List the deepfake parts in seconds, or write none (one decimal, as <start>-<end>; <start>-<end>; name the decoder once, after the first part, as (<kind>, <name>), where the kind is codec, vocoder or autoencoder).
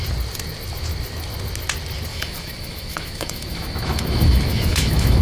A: 2.1-5.2 (autoencoder, DAC-VAE)